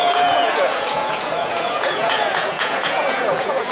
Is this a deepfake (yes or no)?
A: yes